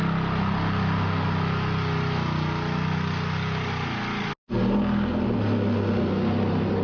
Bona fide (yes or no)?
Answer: yes